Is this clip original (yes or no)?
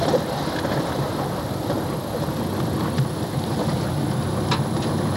yes